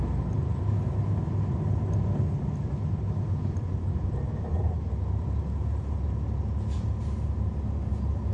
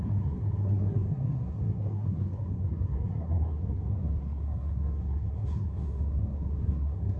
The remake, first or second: second